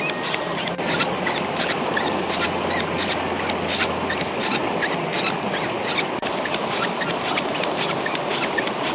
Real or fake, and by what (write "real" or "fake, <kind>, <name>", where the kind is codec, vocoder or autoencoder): real